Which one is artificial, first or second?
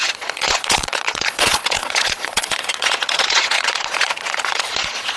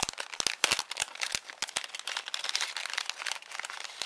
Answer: first